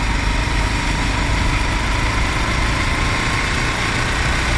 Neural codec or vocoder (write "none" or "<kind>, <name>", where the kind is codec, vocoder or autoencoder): none